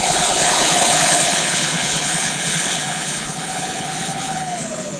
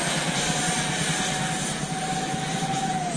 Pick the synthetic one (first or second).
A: first